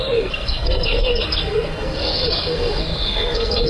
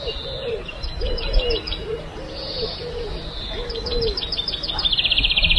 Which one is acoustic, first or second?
second